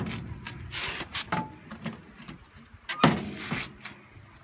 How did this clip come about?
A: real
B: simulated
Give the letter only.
A